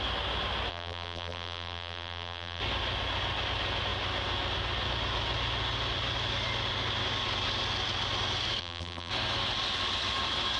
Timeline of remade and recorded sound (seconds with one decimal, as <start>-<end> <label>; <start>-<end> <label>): 0.0-0.7 recorded; 0.7-2.6 remade; 2.6-8.6 recorded; 8.6-9.1 remade; 9.1-10.6 recorded